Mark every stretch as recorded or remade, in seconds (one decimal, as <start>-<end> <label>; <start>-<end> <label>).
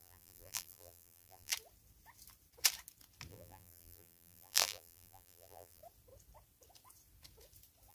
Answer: 0.0-1.5 remade; 1.5-3.3 recorded; 3.3-5.8 remade; 5.8-7.9 recorded